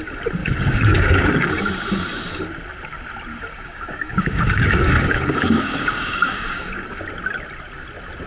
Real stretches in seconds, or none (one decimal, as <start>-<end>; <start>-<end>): 0.0-0.4; 1.5-3.3; 7.0-8.3